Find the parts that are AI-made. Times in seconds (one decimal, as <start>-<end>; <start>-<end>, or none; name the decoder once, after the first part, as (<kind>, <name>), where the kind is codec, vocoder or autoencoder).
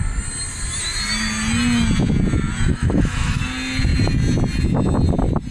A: 2.7-3.4 (autoencoder, DAC-VAE)